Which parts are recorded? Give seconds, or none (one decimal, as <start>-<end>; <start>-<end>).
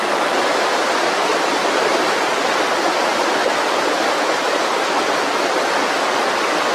0.0-6.7